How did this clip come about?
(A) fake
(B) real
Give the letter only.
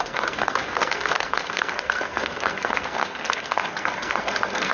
A